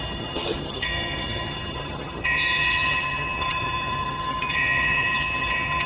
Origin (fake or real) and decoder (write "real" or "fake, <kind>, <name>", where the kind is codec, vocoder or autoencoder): fake, vocoder, HiFi-GAN